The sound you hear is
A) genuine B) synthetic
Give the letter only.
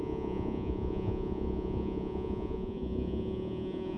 B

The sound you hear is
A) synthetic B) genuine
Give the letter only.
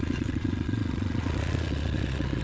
A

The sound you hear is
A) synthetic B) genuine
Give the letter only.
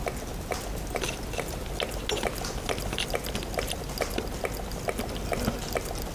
B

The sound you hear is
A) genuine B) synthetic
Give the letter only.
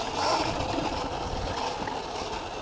A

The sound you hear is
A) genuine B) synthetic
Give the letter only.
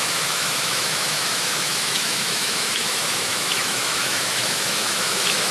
B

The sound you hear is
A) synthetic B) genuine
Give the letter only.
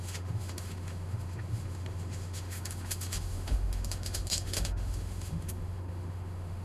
A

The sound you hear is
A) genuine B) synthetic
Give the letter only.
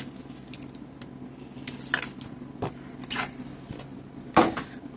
A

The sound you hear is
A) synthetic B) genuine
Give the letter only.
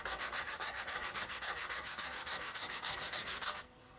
A